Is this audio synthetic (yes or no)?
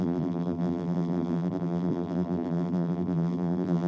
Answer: yes